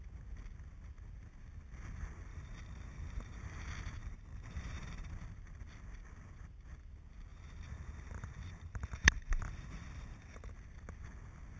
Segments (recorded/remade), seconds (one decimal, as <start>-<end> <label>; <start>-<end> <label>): 0.0-2.3 recorded; 2.3-3.4 remade; 3.4-4.0 recorded; 4.0-5.1 remade; 5.1-7.3 recorded; 7.3-10.5 remade; 10.5-11.6 recorded